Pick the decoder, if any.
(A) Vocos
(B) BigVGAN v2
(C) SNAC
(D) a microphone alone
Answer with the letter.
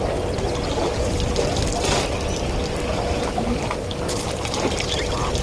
D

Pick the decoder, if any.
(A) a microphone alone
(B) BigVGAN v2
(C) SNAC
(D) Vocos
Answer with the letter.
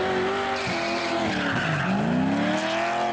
A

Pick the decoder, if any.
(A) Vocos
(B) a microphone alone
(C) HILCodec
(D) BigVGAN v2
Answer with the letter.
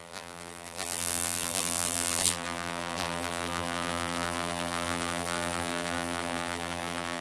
D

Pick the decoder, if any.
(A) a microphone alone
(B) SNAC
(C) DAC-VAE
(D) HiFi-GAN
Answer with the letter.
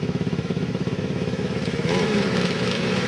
C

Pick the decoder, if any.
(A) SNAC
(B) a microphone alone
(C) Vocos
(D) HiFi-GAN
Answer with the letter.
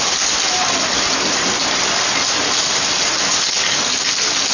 B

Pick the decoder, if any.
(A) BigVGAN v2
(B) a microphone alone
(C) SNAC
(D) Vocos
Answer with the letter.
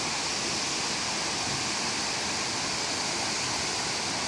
B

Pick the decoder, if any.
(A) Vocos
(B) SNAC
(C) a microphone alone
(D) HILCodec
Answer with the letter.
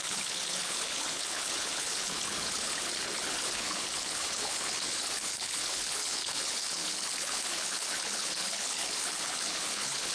D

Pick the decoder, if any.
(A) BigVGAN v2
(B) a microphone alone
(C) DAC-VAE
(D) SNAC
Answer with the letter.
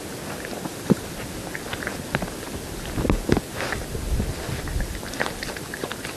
B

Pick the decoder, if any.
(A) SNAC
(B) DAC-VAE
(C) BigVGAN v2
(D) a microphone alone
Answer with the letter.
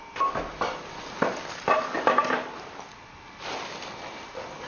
D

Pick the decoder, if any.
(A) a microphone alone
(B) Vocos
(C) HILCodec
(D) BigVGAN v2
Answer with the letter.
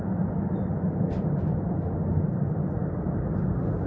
A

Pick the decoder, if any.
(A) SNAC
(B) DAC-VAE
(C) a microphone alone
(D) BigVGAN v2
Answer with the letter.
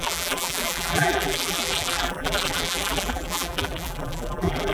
D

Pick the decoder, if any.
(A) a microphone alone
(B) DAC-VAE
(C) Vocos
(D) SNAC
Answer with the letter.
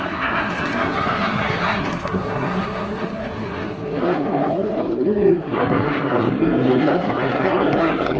D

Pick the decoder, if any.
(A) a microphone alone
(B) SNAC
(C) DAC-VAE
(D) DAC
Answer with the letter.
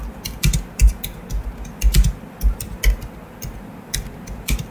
A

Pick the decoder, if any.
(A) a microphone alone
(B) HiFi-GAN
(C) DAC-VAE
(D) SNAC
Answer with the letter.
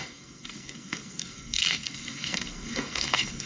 D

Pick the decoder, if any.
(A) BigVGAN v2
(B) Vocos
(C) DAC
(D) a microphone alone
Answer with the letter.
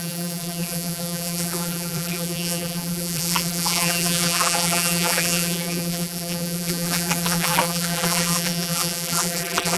A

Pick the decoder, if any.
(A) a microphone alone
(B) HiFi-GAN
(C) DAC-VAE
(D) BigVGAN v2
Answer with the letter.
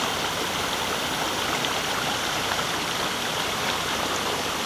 D